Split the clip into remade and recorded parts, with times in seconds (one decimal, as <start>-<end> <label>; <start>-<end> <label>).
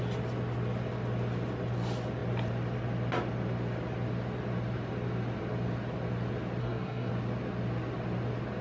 0.0-6.6 recorded; 6.6-7.1 remade; 7.1-8.6 recorded